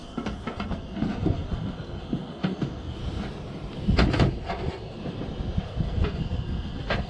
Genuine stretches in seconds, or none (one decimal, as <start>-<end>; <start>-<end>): 3.0-5.6